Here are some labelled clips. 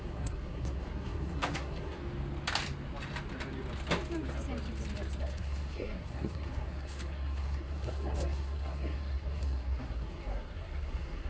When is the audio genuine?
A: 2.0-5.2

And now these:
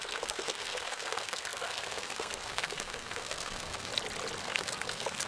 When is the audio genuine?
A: 3.9-4.4

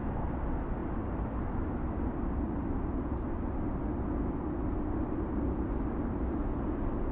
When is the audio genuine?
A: 0.0-7.1

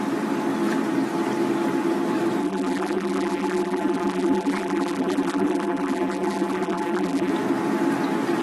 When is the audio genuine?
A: 0.0-2.4; 7.3-8.4

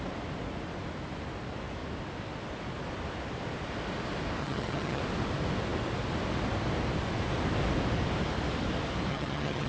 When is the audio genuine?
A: 0.0-4.4; 5.0-9.1

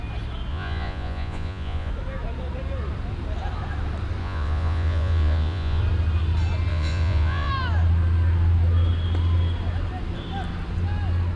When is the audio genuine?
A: 0.0-0.5; 1.9-4.2; 5.8-6.7; 7.5-11.4